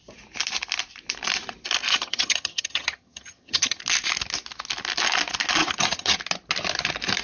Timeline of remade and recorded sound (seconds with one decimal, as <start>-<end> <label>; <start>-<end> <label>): 0.0-1.9 recorded; 1.9-3.8 remade; 3.8-5.6 recorded; 5.6-6.2 remade; 6.2-7.2 recorded